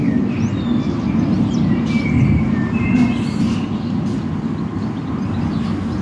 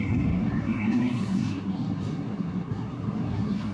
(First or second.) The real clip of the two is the first